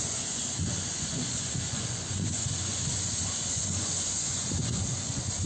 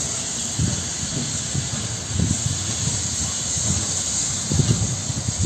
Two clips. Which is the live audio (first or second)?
second